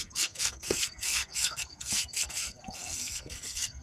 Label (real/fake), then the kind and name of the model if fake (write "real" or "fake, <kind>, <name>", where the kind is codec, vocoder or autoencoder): fake, codec, SNAC